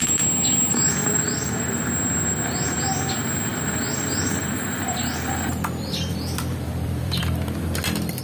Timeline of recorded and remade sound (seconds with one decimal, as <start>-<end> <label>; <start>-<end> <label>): 0.0-1.0 recorded; 1.0-1.8 remade; 1.8-3.5 recorded; 3.5-7.2 remade; 7.2-8.2 recorded